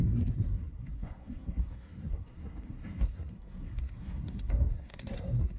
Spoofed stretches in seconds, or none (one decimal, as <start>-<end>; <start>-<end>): 0.0-5.6